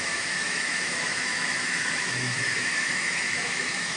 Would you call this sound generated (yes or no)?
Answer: yes